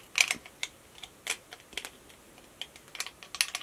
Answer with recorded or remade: recorded